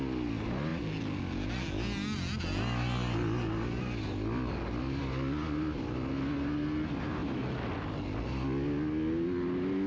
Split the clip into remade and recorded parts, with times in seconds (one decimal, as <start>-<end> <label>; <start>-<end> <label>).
0.0-9.9 recorded